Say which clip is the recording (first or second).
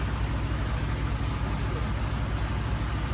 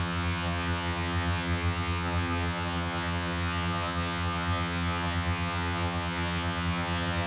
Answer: first